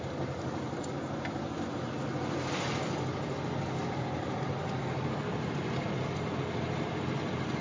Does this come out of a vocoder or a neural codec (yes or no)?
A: no